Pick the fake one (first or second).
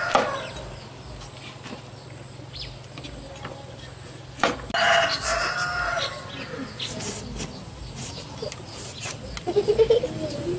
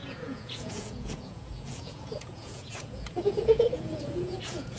second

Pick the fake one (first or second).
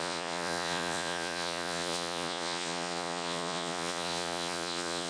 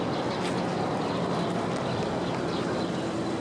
first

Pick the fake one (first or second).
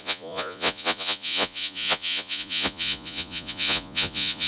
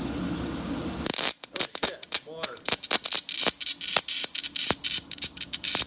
first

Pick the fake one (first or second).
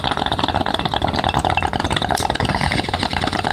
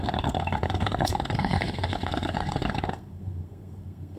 second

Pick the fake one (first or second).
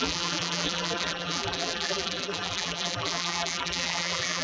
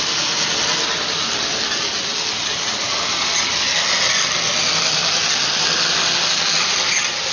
first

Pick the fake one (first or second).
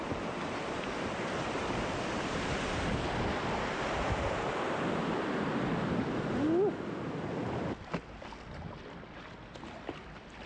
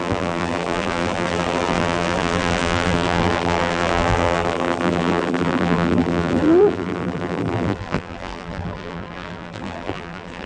second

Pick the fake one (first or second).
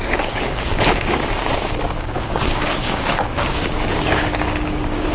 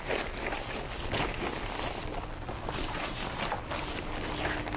first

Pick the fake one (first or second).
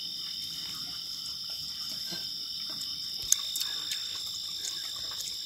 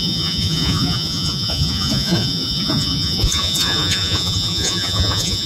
second